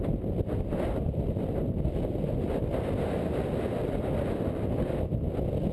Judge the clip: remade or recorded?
recorded